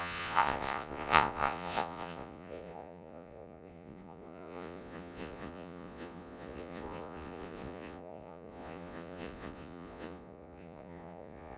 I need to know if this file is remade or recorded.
remade